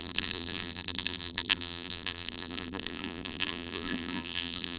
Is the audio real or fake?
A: fake